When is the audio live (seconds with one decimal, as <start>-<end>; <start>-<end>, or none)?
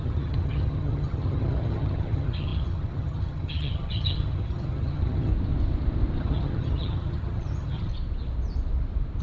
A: 5.3-6.2; 7.9-9.2